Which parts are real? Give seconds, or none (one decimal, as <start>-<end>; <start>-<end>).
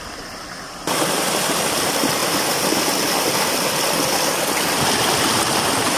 0.0-6.0